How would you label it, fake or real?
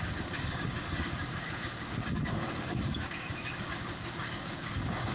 fake